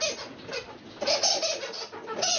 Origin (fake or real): fake